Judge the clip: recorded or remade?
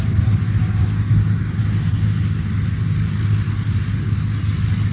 recorded